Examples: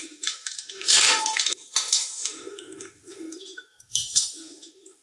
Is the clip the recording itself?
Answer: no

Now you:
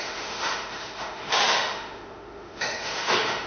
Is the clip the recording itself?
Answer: no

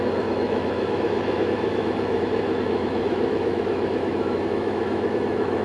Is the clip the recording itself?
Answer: no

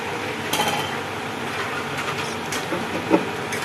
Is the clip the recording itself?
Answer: yes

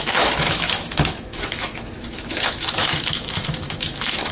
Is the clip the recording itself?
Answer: no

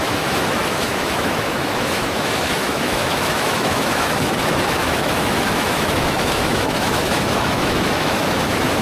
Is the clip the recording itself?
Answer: no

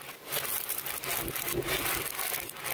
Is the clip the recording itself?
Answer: yes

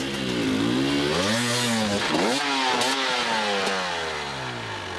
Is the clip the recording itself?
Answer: yes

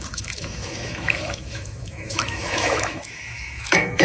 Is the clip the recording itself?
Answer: no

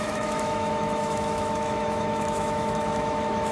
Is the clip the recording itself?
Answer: no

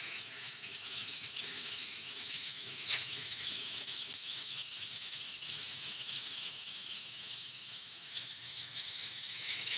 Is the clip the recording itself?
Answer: no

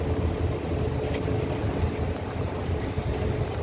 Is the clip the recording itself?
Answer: yes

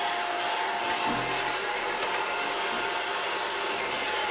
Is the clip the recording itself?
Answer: yes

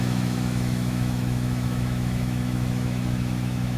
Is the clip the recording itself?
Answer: no